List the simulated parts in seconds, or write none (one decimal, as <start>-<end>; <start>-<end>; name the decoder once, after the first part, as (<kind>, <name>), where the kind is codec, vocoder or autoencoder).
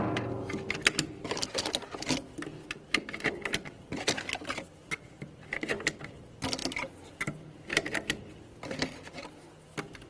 none